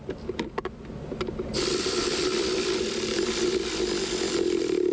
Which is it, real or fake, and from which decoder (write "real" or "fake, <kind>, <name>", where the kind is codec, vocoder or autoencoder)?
real